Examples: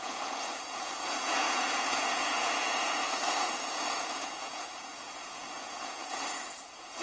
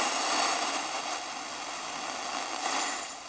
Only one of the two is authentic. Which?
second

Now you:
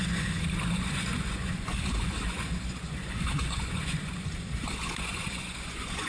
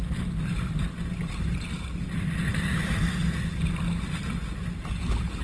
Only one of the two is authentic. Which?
second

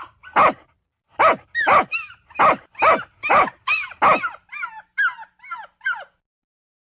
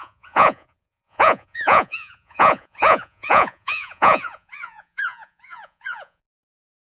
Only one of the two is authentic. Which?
first